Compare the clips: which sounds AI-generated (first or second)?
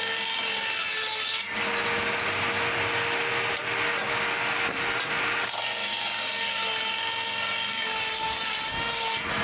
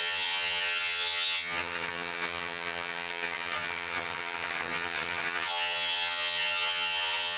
second